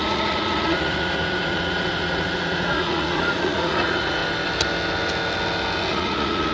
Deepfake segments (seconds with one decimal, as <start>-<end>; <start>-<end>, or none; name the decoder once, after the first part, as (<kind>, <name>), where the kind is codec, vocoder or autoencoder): 0.0-4.2 (vocoder, Vocos); 5.9-6.5